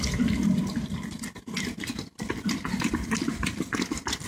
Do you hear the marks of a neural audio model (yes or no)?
no